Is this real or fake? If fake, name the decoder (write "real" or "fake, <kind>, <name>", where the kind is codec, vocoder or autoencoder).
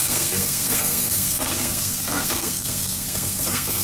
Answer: fake, codec, SNAC